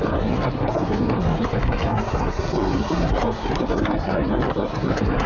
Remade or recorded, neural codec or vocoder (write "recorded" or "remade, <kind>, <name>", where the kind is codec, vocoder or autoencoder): remade, codec, SNAC